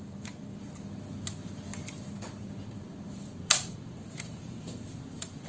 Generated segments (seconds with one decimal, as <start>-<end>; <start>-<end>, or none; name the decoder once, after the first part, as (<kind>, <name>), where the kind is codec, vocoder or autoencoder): 1.7-5.0 (vocoder, BigVGAN v2)